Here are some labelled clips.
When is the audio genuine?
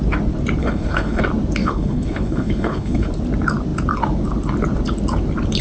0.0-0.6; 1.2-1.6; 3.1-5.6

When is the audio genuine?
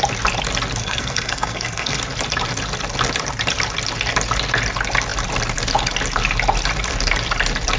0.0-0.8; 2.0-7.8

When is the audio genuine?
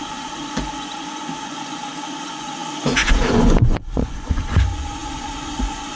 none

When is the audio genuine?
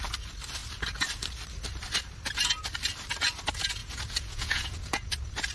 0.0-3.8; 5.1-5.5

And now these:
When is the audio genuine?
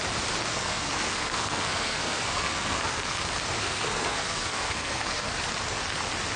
0.0-0.5; 3.2-3.6; 5.3-6.4